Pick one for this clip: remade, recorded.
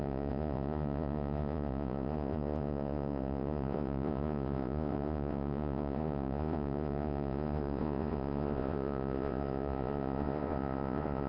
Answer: remade